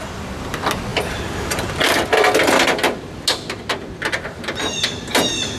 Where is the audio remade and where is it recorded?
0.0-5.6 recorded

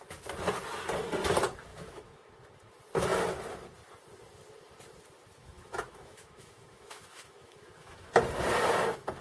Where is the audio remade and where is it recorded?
0.0-1.7 recorded; 1.7-2.3 remade; 2.3-5.4 recorded; 5.4-8.1 remade; 8.1-9.2 recorded

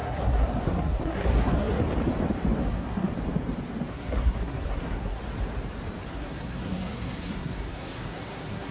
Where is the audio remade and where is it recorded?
0.0-1.8 remade; 1.8-2.6 recorded; 2.6-3.1 remade; 3.1-3.9 recorded; 3.9-5.2 remade; 5.2-6.1 recorded; 6.1-8.7 remade

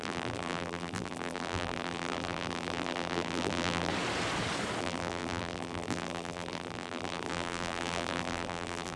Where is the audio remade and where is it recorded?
0.0-3.9 remade; 3.9-4.8 recorded; 4.8-9.0 remade